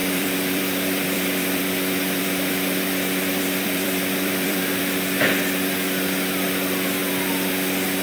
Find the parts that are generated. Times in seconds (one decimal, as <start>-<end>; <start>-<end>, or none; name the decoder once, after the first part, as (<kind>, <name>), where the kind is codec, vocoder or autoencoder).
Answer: 0.0-4.8 (vocoder, BigVGAN v2)